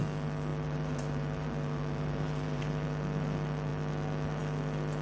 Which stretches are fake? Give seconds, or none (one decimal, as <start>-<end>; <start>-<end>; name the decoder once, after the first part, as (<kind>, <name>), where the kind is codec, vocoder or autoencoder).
0.5-2.6 (vocoder, BigVGAN v2)